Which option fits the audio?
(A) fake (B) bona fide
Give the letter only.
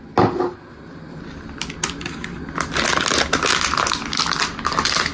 B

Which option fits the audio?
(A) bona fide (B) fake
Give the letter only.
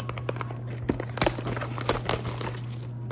A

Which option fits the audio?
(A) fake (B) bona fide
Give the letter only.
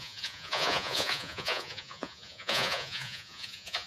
A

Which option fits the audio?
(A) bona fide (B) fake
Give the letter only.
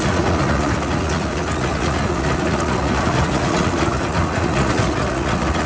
B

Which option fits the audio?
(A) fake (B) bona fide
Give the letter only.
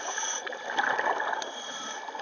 B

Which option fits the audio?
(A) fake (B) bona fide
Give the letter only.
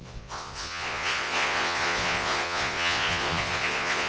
A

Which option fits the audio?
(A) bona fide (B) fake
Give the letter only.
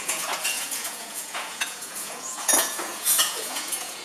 B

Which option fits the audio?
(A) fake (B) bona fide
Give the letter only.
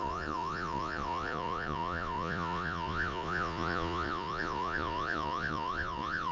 A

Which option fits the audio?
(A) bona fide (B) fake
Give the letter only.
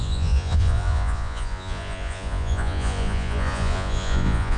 B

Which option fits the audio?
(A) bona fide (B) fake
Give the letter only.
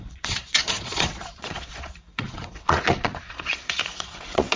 B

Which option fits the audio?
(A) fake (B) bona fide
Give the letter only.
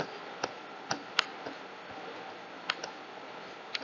B